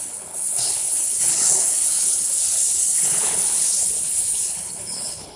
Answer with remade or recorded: remade